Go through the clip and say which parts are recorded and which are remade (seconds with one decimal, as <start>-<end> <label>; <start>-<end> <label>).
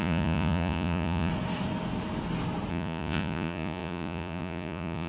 0.0-1.3 remade; 1.3-2.7 recorded; 2.7-5.1 remade